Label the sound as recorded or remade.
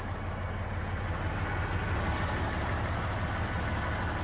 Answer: recorded